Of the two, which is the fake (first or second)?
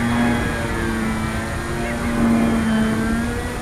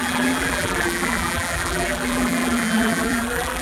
second